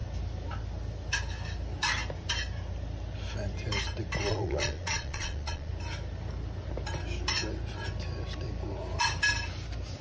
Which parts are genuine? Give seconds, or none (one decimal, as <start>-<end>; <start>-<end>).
0.0-4.3; 5.7-10.0